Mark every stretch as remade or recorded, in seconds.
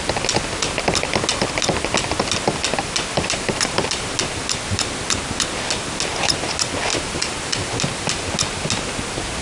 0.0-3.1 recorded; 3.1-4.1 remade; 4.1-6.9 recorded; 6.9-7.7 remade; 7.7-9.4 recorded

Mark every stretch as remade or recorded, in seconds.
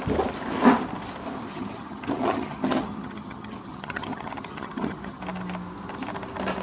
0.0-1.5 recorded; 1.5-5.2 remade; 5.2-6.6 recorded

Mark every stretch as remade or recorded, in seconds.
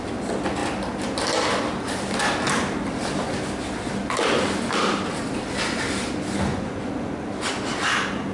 0.0-6.5 recorded; 6.5-7.3 remade; 7.3-8.3 recorded